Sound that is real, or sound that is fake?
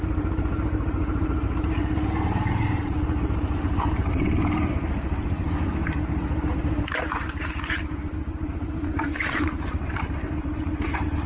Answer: fake